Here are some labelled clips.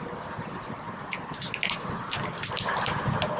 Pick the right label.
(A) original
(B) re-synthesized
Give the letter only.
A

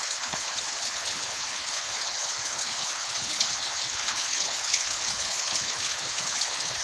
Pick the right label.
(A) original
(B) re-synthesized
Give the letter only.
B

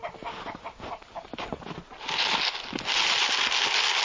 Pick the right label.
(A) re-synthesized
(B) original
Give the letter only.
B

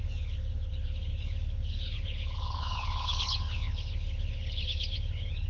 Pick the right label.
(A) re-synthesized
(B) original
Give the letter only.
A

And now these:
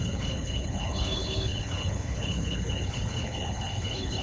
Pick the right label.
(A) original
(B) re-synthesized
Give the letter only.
B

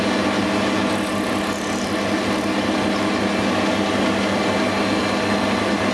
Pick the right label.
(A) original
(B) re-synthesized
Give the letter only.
A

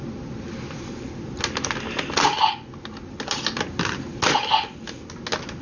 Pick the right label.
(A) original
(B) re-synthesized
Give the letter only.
A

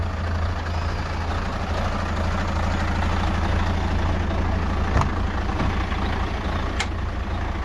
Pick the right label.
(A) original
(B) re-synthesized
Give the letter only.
A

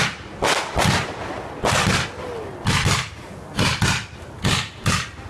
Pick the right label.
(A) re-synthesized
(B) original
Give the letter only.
B